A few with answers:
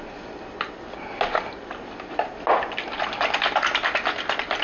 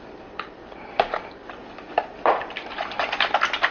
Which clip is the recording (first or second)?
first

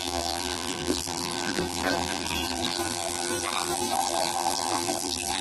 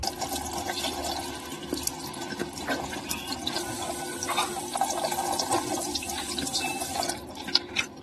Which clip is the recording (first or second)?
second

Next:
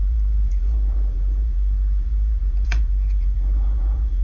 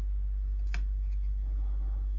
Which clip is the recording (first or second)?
second